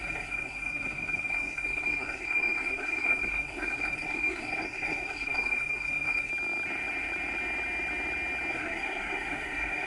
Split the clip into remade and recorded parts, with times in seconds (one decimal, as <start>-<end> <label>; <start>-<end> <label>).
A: 0.0-6.3 remade; 6.3-8.5 recorded; 8.5-9.9 remade